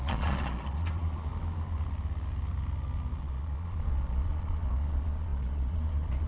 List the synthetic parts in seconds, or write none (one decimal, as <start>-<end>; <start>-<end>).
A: 0.0-1.3; 3.2-6.3